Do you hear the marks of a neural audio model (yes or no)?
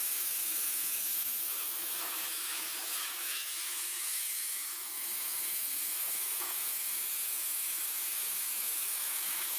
yes